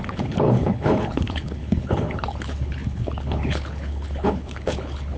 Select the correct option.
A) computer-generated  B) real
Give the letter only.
A